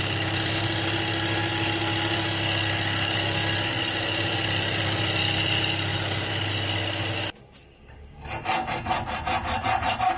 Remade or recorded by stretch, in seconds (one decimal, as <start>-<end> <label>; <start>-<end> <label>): 0.0-10.2 recorded